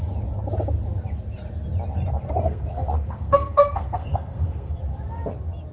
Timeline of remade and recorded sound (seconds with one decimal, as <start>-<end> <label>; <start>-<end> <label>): 0.0-2.4 recorded; 2.4-4.8 remade; 4.8-5.7 recorded